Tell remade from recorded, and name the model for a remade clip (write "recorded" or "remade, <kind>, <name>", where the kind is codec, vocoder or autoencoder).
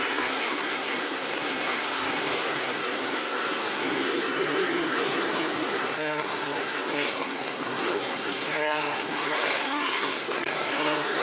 remade, codec, SNAC